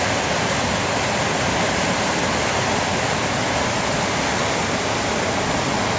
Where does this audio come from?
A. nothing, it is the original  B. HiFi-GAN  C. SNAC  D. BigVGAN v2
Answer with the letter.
A